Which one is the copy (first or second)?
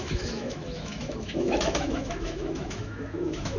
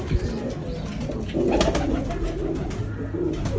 first